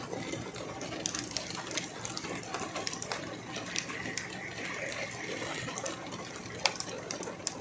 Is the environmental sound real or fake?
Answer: fake